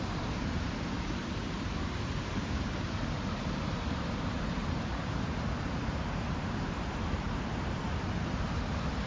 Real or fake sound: fake